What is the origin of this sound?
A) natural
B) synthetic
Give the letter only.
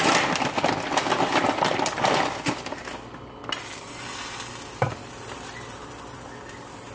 A